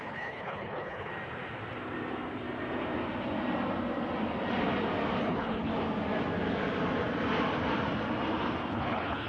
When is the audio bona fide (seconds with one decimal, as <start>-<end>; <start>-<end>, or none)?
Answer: 1.1-5.2; 5.7-8.7